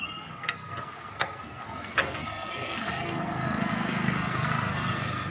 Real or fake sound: fake